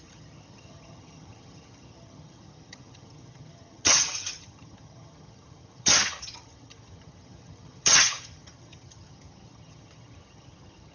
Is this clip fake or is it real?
fake